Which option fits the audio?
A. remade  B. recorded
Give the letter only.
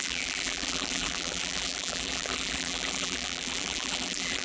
A